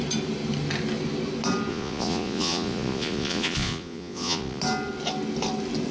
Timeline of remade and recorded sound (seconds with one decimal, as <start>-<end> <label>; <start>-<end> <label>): 0.0-1.7 recorded; 1.7-4.6 remade; 4.6-5.9 recorded